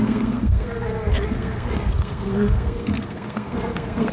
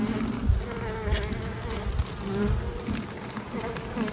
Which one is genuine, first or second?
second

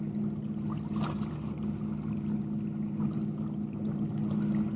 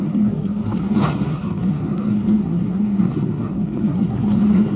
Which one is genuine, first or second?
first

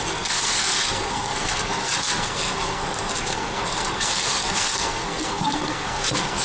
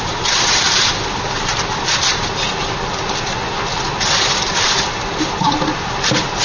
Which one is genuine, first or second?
second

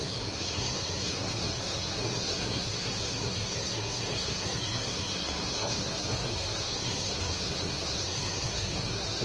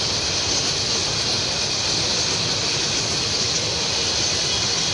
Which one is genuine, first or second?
second